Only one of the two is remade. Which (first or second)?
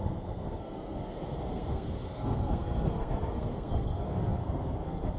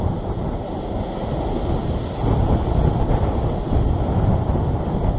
first